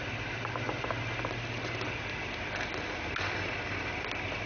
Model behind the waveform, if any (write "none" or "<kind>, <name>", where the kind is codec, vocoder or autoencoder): none